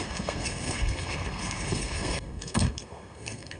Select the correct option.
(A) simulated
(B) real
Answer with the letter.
A